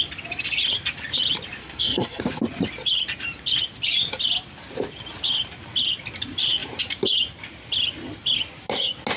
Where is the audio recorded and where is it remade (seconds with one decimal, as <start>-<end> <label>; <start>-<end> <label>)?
0.0-1.6 recorded; 1.6-2.2 remade; 2.2-9.2 recorded